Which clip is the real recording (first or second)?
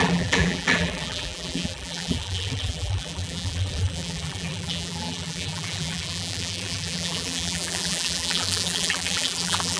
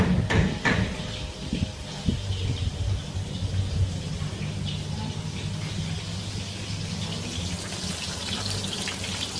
second